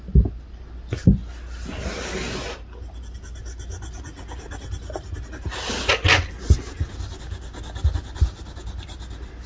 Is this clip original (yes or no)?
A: yes